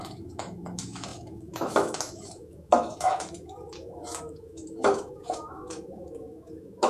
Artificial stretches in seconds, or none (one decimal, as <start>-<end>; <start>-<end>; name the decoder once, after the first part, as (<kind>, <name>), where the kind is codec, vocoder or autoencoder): 0.0-6.9 (autoencoder, DAC-VAE)

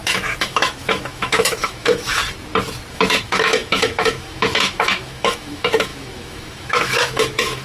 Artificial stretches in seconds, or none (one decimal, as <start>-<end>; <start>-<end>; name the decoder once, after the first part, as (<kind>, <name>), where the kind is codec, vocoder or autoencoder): 0.0-2.2 (autoencoder, DAC-VAE); 2.9-7.6

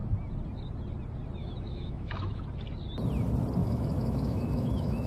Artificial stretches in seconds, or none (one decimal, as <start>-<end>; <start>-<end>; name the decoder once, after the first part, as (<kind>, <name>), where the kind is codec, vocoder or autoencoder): 1.4-2.4 (autoencoder, DAC-VAE); 3.6-5.1

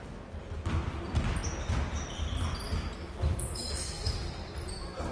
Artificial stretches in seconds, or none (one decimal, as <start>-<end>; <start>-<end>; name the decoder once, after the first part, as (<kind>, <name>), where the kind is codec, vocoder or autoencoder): 3.3-4.2 (autoencoder, DAC-VAE)

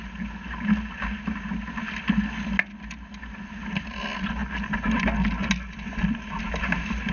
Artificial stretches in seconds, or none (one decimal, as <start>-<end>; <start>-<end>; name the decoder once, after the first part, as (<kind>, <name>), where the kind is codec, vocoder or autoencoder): none

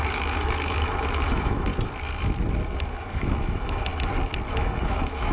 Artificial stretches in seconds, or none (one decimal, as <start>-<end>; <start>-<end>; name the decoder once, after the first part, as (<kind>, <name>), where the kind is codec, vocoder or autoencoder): 0.0-1.7 (autoencoder, DAC-VAE); 2.8-3.9; 4.5-5.3